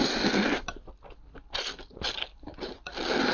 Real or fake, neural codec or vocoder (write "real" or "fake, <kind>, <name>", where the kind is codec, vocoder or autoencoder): real